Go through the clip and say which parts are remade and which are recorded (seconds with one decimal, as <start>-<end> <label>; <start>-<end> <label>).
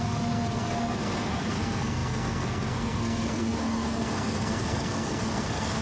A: 0.0-5.8 remade